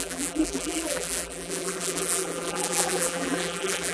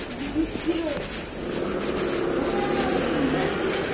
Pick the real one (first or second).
second